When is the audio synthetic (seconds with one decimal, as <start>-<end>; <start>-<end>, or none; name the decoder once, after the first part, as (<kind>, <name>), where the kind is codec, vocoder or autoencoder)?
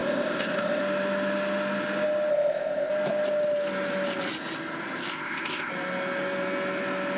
0.0-0.8 (codec, ZipCodec); 2.3-2.9; 5.1-5.7